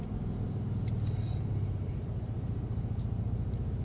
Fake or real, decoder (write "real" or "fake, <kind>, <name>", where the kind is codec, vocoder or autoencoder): real